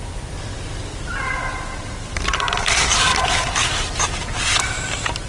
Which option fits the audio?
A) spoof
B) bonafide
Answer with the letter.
A